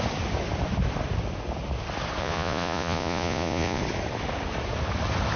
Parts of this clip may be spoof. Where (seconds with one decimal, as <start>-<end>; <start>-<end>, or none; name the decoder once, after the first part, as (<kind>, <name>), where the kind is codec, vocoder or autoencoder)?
2.2-3.8 (vocoder, Vocos)